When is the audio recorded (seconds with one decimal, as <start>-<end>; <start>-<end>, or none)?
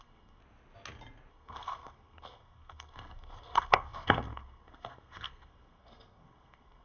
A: 0.4-1.3